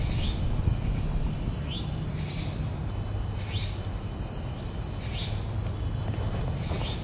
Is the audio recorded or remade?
recorded